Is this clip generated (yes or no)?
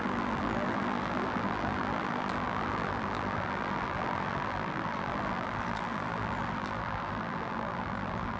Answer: yes